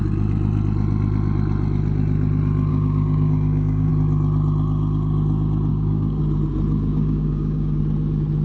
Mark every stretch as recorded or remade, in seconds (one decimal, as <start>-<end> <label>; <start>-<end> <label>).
0.0-2.7 recorded; 2.7-3.9 remade; 3.9-5.7 recorded; 5.7-6.2 remade; 6.2-6.9 recorded; 6.9-7.8 remade; 7.8-8.4 recorded